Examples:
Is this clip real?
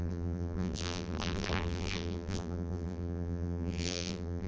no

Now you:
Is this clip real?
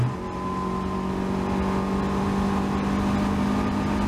yes